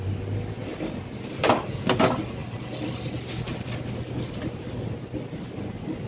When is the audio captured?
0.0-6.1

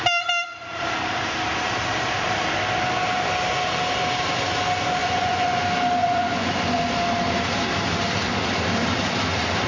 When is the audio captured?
0.0-5.0; 5.6-6.0; 6.8-9.7

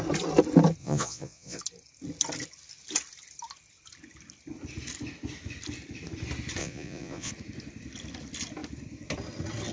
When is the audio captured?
0.0-0.8; 1.6-6.6; 7.3-9.7

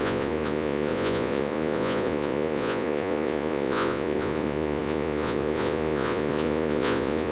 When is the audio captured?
none